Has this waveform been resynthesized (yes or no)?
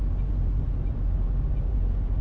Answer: yes